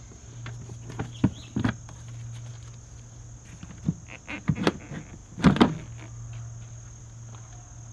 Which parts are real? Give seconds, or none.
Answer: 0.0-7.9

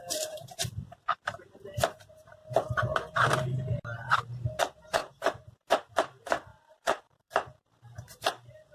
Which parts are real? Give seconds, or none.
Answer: 2.4-4.1